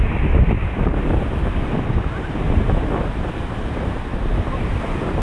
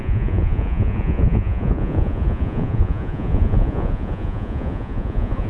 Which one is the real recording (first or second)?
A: first